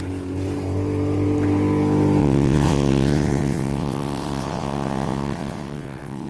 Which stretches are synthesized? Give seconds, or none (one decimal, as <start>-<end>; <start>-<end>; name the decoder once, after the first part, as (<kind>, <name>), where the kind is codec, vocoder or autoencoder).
2.2-6.3 (vocoder, WaveNeXt)